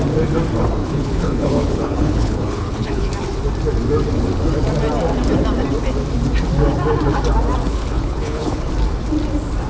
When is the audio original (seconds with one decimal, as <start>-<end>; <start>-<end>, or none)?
0.0-0.8; 3.1-7.6; 8.7-9.7